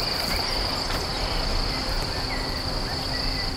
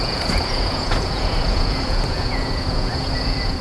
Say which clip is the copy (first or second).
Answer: second